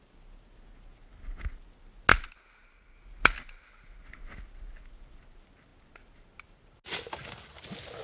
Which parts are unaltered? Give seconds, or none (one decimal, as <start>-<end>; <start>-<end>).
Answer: 0.0-8.0